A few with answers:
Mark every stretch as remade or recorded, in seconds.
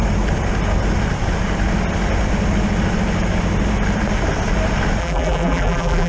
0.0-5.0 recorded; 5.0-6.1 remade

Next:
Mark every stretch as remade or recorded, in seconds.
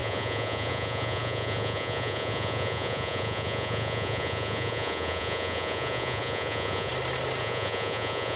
0.0-6.9 remade; 6.9-7.4 recorded; 7.4-8.4 remade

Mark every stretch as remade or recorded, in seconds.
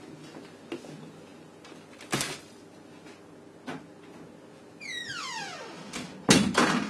0.0-6.9 recorded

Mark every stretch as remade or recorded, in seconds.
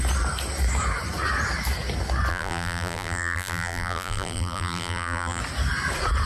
0.0-2.3 recorded; 2.3-5.4 remade; 5.4-6.3 recorded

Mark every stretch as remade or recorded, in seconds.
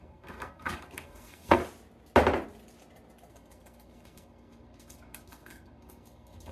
0.0-1.6 remade; 1.6-3.3 recorded; 3.3-6.5 remade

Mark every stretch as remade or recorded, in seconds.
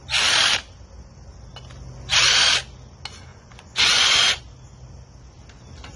0.0-3.3 recorded; 3.3-4.4 remade; 4.4-6.0 recorded